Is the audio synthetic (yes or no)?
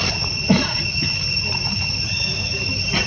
no